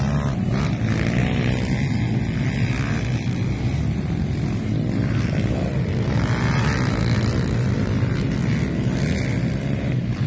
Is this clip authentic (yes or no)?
yes